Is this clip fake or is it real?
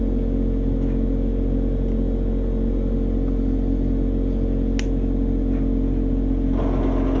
real